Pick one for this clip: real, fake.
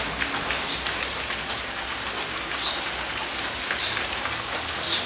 real